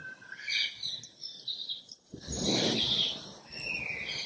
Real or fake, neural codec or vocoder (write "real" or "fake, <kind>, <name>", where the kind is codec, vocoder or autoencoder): real